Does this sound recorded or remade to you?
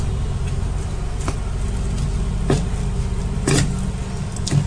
recorded